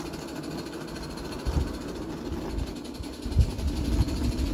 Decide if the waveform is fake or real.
real